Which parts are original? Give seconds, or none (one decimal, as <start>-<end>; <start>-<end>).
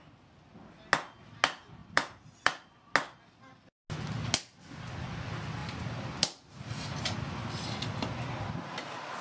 0.0-1.8; 2.9-5.6; 7.4-9.2